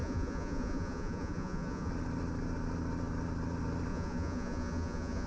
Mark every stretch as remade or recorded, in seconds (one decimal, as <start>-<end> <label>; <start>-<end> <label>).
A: 0.0-1.9 remade; 1.9-3.9 recorded; 3.9-5.3 remade